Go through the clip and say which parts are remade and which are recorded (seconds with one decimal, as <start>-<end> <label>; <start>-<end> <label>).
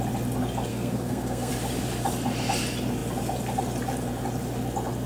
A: 0.0-0.7 recorded; 0.7-1.5 remade; 1.5-5.1 recorded